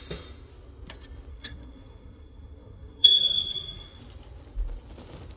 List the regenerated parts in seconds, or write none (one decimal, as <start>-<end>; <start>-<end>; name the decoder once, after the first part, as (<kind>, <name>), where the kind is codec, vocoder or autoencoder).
1.3-4.0 (codec, SNAC)